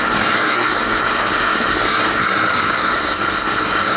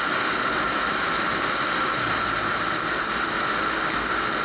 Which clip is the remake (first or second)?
first